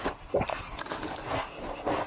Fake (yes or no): no